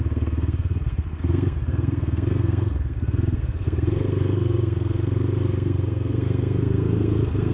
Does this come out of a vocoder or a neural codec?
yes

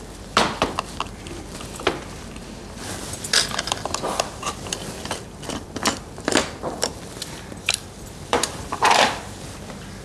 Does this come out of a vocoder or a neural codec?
yes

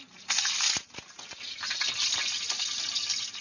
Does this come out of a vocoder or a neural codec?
no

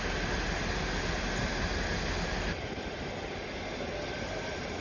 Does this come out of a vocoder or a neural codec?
no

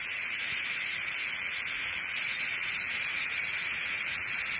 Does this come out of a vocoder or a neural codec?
yes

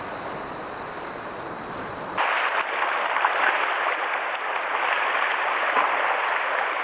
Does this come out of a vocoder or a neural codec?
no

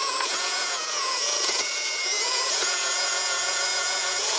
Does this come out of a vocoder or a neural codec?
yes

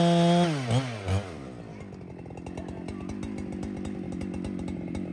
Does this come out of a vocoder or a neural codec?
no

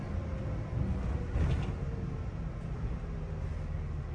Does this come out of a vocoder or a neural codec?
no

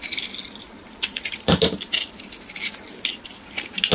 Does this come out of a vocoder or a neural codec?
no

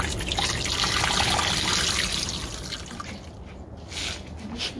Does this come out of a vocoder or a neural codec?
no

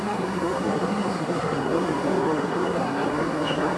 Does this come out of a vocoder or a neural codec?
yes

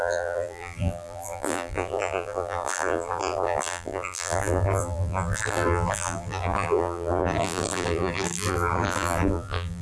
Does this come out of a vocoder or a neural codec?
yes